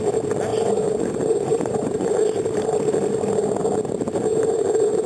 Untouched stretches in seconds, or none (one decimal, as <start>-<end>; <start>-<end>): 0.0-0.5; 2.1-4.3